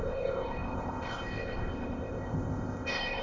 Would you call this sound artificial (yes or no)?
yes